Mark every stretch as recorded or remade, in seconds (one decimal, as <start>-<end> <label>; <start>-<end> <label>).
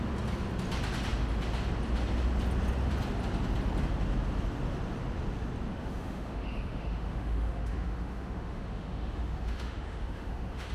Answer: 0.0-5.7 recorded; 5.7-10.7 remade